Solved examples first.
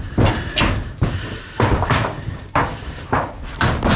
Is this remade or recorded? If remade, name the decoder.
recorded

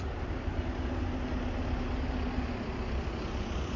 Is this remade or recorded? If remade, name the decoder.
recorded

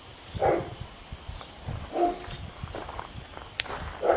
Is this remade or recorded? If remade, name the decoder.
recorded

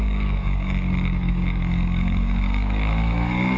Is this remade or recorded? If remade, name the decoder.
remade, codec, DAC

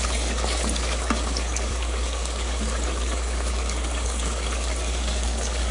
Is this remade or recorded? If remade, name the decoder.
remade, codec, DAC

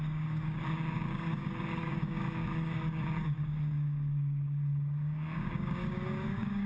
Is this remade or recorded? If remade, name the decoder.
remade, codec, DAC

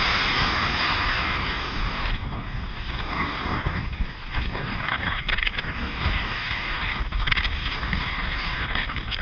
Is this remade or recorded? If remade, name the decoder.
remade, codec, DAC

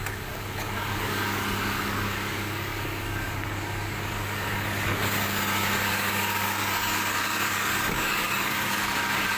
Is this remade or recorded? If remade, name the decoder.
remade, codec, DAC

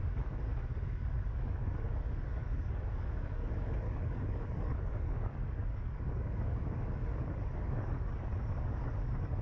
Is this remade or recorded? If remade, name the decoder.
remade, codec, DAC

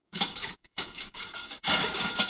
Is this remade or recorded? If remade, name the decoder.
remade, codec, DAC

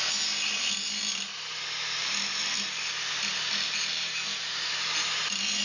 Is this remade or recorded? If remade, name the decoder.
recorded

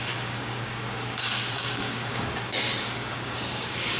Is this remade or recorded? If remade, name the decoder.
remade, codec, DAC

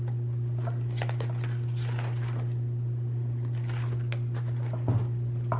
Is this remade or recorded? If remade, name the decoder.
recorded